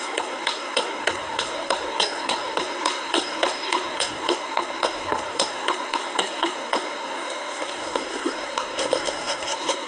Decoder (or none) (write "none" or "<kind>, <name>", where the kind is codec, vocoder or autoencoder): codec, SNAC